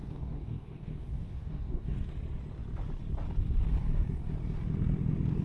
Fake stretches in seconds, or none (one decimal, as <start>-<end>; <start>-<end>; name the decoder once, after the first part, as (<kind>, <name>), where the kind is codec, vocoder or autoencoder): 0.0-2.1 (codec, DAC)